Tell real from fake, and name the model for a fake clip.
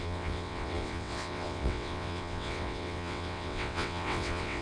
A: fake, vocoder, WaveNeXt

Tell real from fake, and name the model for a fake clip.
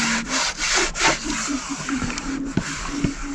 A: real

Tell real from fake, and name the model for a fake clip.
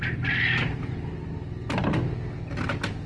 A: real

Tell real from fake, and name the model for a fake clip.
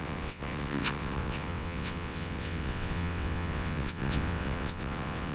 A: fake, vocoder, WaveNeXt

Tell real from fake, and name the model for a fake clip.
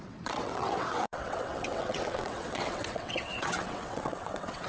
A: fake, vocoder, WaveNeXt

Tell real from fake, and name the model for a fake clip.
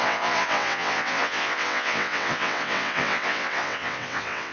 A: fake, vocoder, WaveNeXt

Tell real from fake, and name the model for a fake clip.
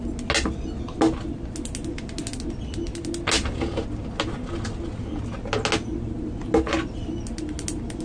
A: real